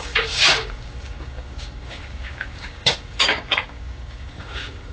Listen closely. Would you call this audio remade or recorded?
remade